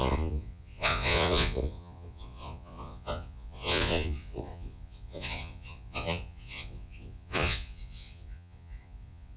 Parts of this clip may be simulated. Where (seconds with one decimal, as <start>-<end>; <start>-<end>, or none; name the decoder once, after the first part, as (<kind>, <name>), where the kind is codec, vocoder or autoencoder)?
0.0-9.4 (vocoder, Vocos)